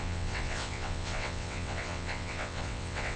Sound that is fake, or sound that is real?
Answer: fake